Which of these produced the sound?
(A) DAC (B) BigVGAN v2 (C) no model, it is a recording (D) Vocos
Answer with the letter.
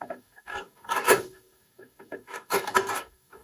A